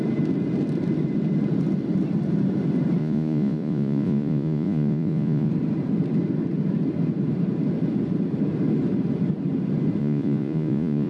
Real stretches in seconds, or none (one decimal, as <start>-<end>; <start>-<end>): 0.0-3.0; 5.5-10.0